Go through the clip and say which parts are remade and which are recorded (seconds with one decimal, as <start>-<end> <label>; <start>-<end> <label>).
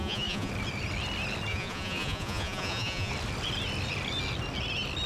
0.0-0.5 remade; 0.5-1.5 recorded; 1.5-3.1 remade; 3.1-5.1 recorded